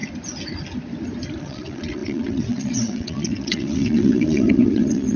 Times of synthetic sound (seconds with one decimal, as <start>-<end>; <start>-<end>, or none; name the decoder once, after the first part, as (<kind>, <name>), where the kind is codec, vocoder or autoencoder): 1.4-5.2 (vocoder, WaveNeXt)